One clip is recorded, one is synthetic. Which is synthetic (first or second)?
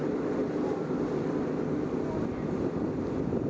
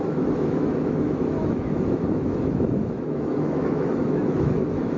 second